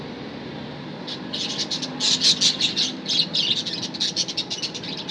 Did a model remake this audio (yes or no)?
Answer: no